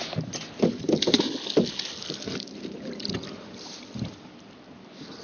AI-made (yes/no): no